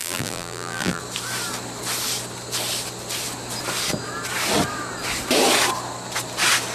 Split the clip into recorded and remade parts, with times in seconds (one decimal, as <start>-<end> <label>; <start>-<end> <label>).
0.0-1.0 remade; 1.0-6.7 recorded